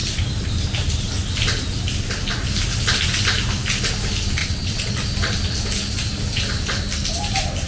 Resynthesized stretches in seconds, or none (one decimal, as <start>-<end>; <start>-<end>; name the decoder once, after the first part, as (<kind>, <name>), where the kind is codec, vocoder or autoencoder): 4.4-4.9 (vocoder, WaveNeXt)